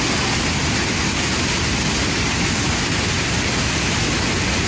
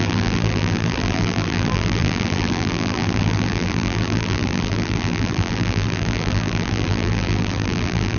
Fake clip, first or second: second